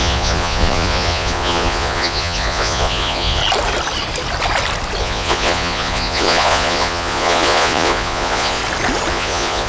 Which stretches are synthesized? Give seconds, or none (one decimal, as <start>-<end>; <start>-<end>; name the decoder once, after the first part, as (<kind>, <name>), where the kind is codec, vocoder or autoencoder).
0.0-3.4 (vocoder, Vocos); 5.0-8.6; 9.1-9.7